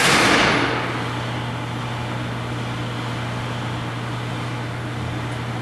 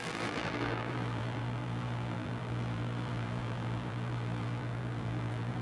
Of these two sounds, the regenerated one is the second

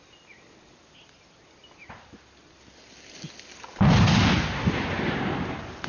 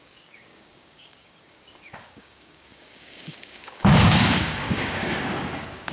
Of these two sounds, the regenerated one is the second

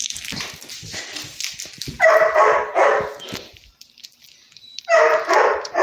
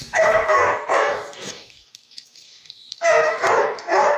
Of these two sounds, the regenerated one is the second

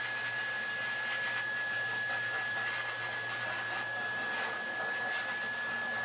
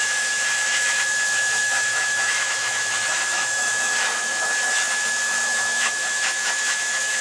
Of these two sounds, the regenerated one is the second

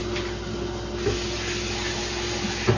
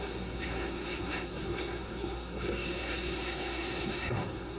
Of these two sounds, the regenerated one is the second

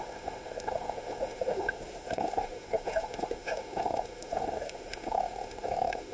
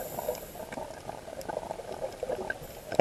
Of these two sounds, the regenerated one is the first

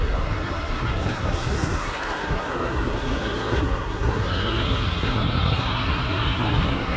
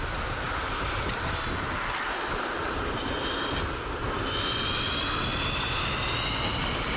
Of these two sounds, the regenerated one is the first